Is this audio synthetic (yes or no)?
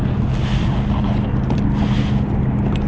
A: no